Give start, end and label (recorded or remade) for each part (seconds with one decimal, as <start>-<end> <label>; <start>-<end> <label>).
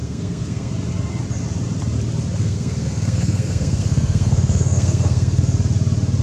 0.0-0.7 remade; 0.7-2.4 recorded; 2.4-5.4 remade; 5.4-6.2 recorded